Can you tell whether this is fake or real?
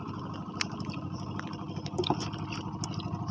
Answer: real